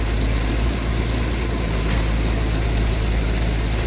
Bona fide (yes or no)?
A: yes